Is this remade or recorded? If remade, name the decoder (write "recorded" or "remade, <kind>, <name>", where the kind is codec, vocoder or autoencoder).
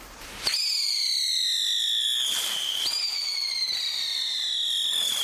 remade, vocoder, BigVGAN v2